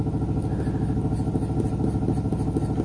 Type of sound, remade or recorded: recorded